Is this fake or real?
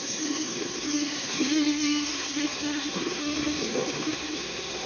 fake